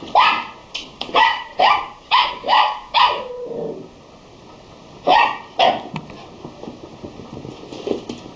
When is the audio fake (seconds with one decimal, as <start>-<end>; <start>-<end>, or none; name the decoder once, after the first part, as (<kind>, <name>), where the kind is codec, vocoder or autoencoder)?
0.6-3.3 (codec, DAC)